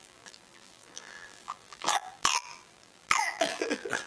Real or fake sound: fake